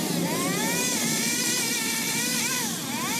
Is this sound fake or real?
fake